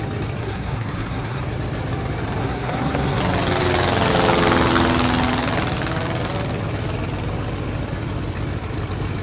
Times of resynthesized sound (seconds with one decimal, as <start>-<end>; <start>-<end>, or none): 0.4-1.4; 2.4-3.2